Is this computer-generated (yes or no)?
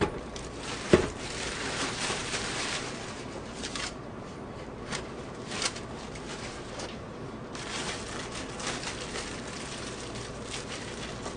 yes